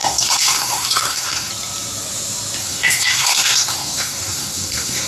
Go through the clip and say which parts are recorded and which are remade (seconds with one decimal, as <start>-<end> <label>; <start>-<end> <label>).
0.0-1.5 remade; 1.5-2.6 recorded; 2.6-5.1 remade